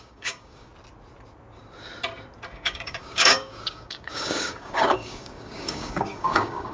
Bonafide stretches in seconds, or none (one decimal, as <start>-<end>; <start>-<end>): 0.7-2.5